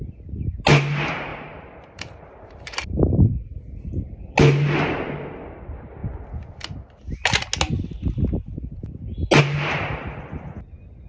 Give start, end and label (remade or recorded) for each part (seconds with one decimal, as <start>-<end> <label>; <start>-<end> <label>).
0.0-1.3 recorded; 1.3-3.3 remade; 3.3-11.1 recorded